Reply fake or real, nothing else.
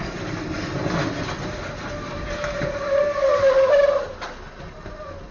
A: real